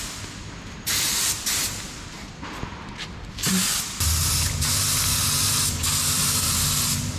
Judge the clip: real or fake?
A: real